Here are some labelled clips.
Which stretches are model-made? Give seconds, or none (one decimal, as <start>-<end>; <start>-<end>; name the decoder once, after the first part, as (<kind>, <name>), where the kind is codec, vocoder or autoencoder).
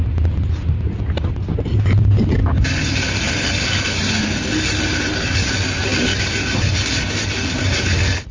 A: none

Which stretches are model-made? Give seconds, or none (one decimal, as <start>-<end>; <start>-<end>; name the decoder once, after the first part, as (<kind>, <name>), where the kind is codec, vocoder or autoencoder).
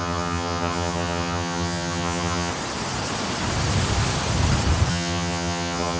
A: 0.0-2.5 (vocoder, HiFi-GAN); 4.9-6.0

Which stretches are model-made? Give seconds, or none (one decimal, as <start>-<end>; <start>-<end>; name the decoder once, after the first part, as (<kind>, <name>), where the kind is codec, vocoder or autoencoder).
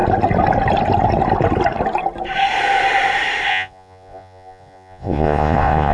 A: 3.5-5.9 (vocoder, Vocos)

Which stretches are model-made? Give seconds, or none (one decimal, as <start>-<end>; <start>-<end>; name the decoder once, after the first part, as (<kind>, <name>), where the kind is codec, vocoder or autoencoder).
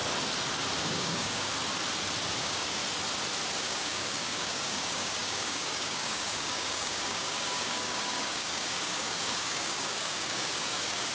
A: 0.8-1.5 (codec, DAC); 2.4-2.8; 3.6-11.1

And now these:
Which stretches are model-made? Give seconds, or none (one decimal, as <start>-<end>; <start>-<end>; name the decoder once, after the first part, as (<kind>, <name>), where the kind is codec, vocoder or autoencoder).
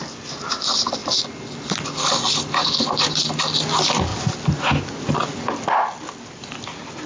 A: none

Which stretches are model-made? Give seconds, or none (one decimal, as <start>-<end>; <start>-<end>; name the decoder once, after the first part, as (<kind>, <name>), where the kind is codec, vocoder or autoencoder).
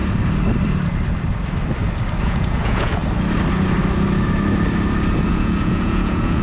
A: 2.2-3.0 (vocoder, Vocos); 5.3-6.4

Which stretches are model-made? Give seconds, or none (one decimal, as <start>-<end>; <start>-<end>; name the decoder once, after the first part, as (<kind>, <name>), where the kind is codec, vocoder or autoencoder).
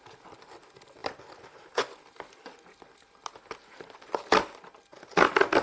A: none